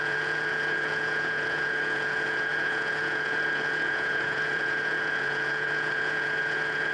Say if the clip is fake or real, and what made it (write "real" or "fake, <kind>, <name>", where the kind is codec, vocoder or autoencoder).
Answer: fake, vocoder, Vocos